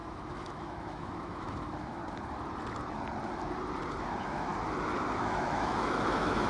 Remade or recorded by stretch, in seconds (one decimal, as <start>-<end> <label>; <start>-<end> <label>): 0.0-2.0 remade; 2.0-4.0 recorded; 4.0-4.5 remade; 4.5-5.2 recorded; 5.2-6.5 remade